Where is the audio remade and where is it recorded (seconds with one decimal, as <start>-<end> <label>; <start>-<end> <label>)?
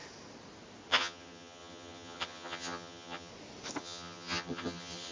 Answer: 0.0-0.9 recorded; 0.9-3.3 remade; 3.3-3.8 recorded; 3.8-5.1 remade